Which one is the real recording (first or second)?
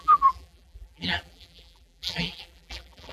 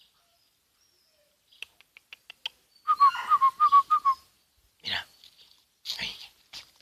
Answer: second